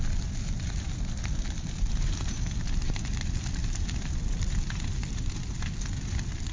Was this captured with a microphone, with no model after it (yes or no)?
yes